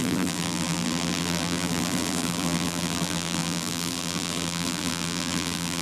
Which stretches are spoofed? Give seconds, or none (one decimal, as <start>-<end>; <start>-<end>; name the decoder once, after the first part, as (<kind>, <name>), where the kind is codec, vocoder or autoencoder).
0.0-5.8 (vocoder, BigVGAN v2)

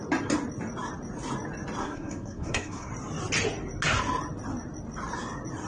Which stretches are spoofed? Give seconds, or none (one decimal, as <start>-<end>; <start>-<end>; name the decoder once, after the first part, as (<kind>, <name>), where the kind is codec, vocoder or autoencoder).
1.8-2.9 (codec, SNAC)

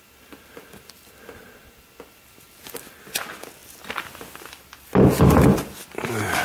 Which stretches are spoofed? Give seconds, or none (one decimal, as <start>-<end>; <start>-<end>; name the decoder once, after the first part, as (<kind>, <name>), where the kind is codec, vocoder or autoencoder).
none